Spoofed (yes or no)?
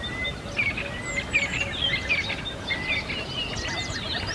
no